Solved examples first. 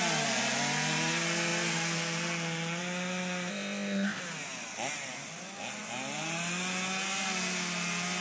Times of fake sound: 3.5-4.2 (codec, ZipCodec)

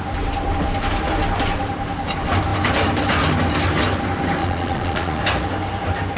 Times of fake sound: 4.4-5.2 (vocoder, Vocos)

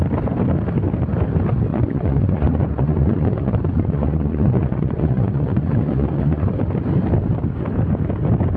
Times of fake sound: 1.7-6.5 (vocoder, Vocos)

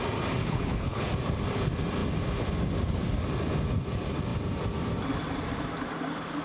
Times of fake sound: 0.4-1.1 (codec, HILCodec)

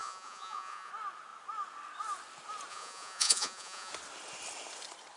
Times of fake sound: 0.0-0.9 (vocoder, Vocos); 2.7-3.9

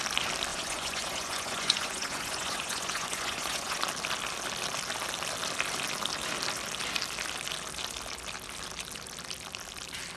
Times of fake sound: 0.5-3.8 (vocoder, Vocos)

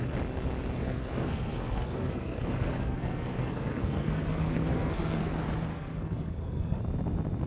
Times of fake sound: 0.8-5.3 (codec, SNAC); 5.7-6.8